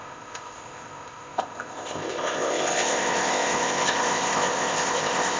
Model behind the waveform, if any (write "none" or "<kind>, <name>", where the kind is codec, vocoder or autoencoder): codec, ZipCodec